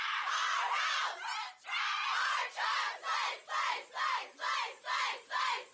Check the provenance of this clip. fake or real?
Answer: real